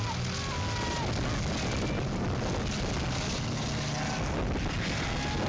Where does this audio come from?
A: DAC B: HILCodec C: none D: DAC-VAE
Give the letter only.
C